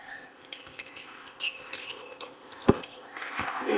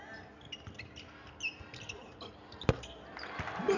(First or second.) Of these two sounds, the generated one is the first